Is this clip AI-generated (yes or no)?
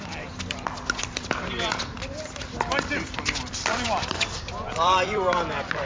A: yes